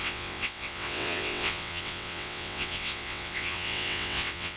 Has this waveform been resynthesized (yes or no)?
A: yes